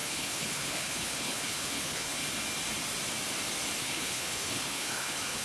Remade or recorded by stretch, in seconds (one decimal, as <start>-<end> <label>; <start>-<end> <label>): 0.0-2.2 remade; 2.2-3.8 recorded; 3.8-5.4 remade